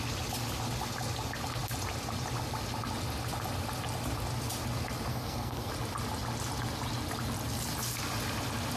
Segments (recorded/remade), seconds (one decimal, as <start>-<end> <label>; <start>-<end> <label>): 0.0-5.1 recorded; 5.1-5.7 remade; 5.7-8.8 recorded